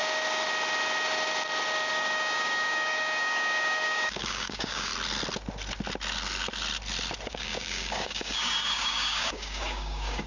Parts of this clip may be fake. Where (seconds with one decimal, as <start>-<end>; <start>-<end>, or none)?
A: 1.9-4.9; 7.3-10.3